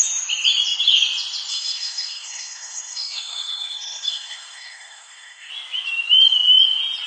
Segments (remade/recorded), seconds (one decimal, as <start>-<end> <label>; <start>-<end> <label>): 0.0-1.5 recorded; 1.5-5.5 remade; 5.5-7.1 recorded